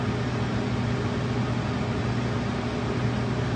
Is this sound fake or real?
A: real